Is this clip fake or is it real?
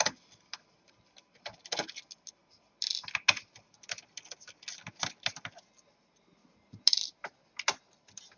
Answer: real